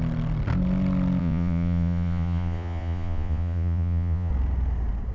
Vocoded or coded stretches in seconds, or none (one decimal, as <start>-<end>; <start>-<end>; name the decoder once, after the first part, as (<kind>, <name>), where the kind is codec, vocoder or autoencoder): 1.2-4.3 (vocoder, Vocos)